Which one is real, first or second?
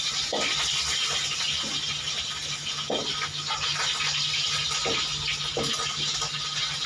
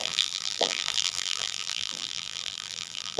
first